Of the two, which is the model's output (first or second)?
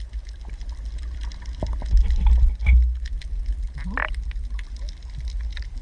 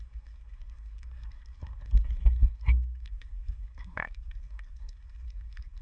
second